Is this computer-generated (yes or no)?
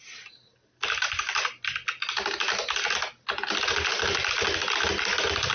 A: no